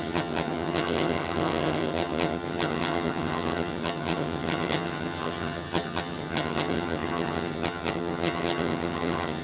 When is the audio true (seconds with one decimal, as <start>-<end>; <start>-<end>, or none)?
none